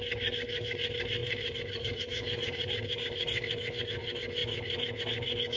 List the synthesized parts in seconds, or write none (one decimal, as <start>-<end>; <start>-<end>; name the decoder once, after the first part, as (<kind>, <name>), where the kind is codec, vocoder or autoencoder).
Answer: 1.2-3.7 (vocoder, BigVGAN v2)